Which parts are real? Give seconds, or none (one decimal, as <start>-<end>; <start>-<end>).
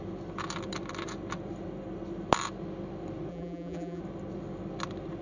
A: 0.0-3.3; 4.0-5.2